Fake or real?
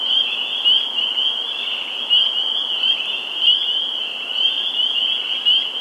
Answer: real